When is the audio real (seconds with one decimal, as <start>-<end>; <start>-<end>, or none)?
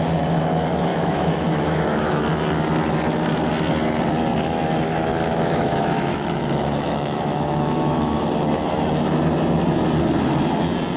0.0-0.9; 2.2-5.1; 8.2-11.0